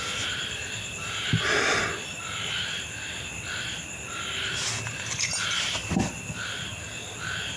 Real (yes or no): yes